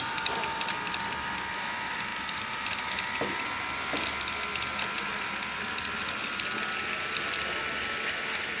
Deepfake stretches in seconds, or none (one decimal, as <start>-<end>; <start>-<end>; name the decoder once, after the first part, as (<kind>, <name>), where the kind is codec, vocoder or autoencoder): 0.0-2.1 (vocoder, BigVGAN v2); 4.8-8.6